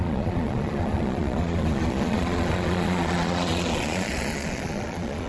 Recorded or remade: remade